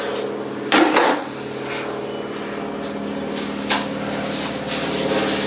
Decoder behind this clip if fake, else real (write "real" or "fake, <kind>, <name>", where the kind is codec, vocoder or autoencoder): real